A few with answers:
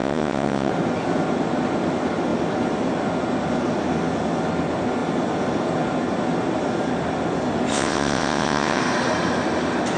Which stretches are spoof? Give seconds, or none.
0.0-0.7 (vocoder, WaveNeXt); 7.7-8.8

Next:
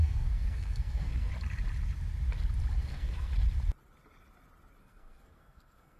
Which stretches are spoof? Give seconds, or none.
0.0-1.3 (codec, SNAC); 2.8-3.3; 4.8-6.0

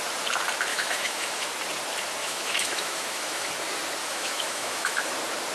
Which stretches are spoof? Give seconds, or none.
0.7-1.5 (autoencoder, DAC-VAE); 2.2-3.5; 4.0-5.1

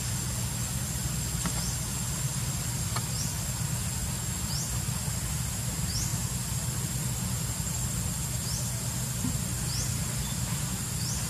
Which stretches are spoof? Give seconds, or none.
none